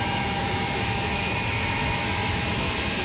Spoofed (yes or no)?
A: yes